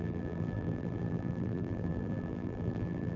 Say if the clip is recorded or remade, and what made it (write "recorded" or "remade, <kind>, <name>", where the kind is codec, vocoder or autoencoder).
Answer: remade, vocoder, BigVGAN v2